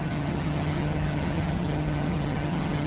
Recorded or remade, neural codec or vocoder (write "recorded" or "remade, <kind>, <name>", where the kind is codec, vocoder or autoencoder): remade, vocoder, HiFi-GAN